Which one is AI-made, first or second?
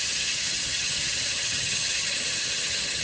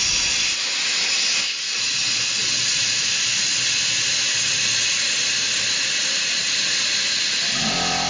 first